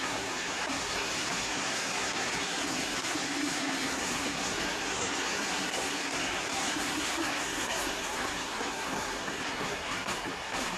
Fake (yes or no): yes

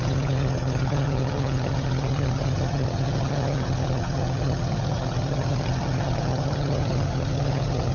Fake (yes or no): yes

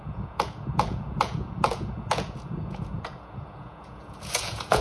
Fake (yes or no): yes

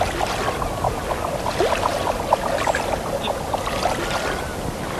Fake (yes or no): no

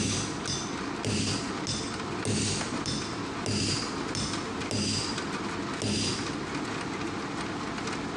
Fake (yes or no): no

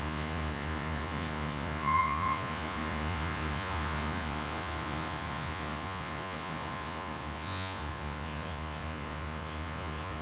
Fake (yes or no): yes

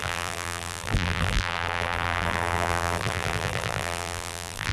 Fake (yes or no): yes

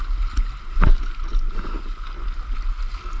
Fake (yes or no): no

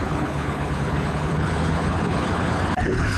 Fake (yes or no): yes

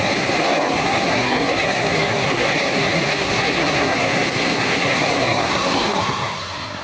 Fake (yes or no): yes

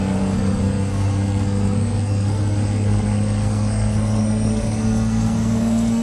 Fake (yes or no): yes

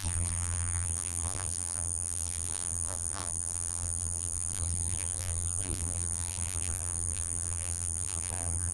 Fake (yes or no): yes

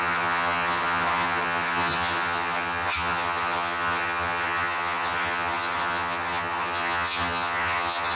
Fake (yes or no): yes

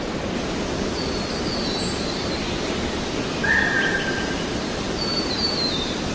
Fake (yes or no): yes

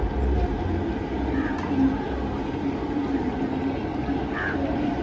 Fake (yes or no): no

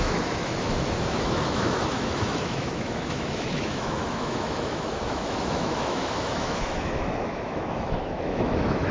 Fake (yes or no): yes